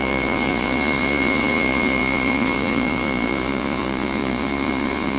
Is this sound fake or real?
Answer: fake